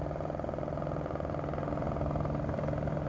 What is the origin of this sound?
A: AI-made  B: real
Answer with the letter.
B